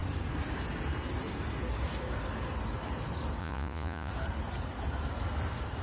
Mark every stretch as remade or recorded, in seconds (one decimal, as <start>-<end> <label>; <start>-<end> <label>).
0.0-3.4 recorded; 3.4-4.1 remade; 4.1-5.8 recorded